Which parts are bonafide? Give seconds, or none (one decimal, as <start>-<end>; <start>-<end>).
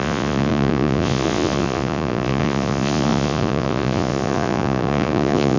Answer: none